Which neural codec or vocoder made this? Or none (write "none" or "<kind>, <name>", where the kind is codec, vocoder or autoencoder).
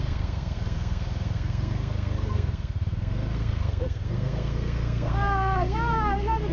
codec, SNAC